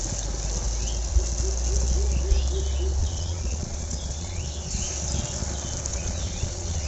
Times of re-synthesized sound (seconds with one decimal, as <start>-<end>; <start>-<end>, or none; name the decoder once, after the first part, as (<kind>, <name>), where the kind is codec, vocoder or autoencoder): 3.0-4.4 (vocoder, Vocos); 5.9-6.9